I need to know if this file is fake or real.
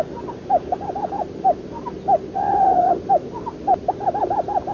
real